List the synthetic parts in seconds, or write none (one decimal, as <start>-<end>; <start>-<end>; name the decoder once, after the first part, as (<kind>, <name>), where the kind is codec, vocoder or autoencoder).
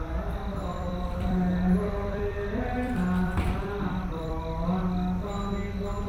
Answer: 0.7-4.4 (vocoder, BigVGAN v2)